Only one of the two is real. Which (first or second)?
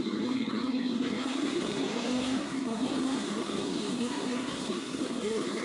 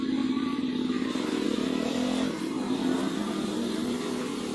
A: second